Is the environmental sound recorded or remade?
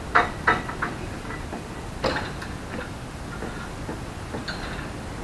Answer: recorded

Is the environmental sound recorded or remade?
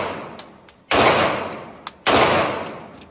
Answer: recorded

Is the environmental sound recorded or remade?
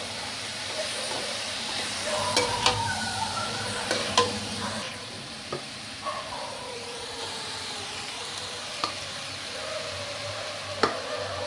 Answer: remade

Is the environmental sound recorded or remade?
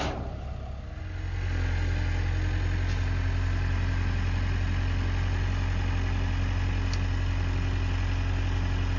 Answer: recorded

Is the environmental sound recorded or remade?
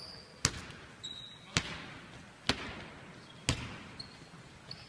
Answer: recorded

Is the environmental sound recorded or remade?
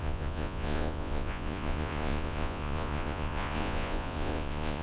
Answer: remade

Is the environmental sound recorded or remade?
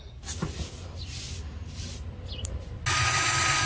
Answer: recorded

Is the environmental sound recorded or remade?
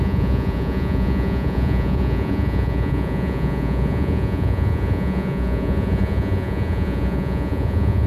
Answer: remade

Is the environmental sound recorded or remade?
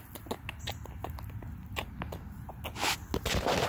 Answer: recorded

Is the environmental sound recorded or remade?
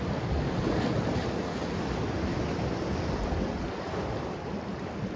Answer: recorded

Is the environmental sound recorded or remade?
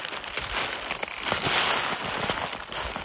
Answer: recorded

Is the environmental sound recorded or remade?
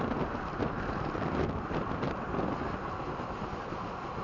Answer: recorded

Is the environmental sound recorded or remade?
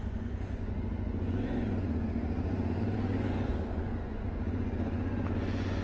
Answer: remade